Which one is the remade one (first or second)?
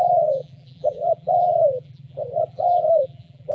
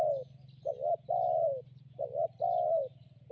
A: first